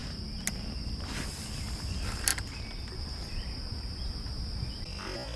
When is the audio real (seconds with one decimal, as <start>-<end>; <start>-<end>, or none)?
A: 0.0-5.4